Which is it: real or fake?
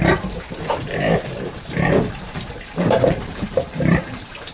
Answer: fake